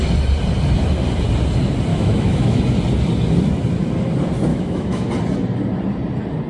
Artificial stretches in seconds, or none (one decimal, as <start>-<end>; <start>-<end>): 1.9-2.6; 4.5-5.1